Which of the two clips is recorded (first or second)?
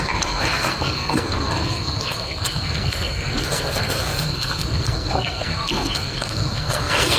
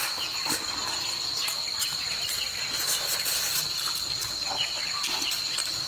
second